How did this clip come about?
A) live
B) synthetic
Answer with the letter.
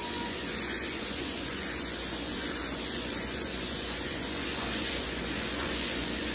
B